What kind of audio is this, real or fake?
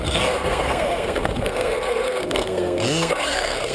fake